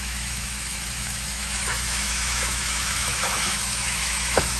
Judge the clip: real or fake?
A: fake